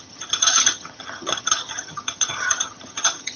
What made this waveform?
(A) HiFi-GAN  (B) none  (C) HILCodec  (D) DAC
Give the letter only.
A